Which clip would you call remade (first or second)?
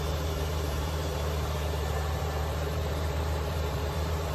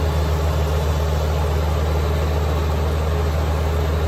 first